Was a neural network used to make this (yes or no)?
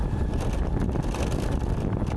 no